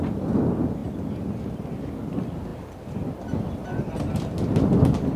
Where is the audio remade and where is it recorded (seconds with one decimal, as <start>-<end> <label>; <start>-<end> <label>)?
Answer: 0.0-5.2 recorded